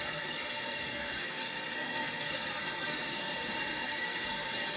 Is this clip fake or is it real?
fake